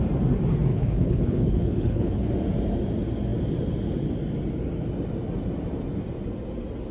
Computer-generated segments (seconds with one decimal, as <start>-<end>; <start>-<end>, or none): 0.7-2.3